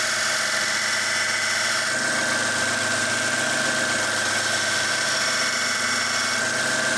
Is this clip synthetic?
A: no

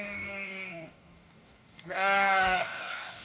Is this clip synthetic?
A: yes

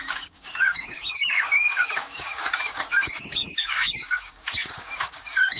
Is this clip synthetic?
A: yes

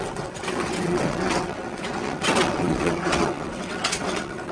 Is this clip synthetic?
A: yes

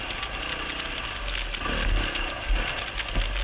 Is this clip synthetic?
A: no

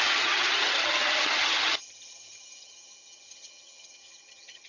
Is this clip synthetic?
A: yes